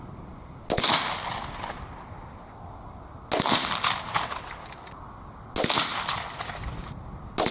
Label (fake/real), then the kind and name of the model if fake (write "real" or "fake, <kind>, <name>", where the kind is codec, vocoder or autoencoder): real